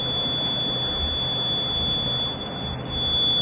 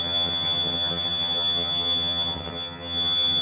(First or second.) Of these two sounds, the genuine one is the first